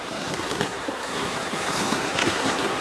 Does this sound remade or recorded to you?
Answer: remade